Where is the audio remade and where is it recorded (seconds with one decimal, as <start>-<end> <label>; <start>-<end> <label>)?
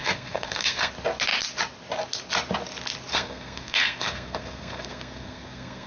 0.0-0.9 remade; 0.9-3.1 recorded; 3.1-5.9 remade